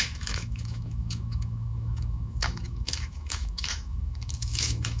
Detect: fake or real fake